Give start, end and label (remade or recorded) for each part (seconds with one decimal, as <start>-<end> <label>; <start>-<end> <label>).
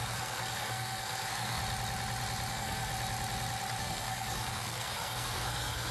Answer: 0.0-1.6 remade; 1.6-2.5 recorded; 2.5-2.9 remade; 2.9-3.8 recorded; 3.8-5.9 remade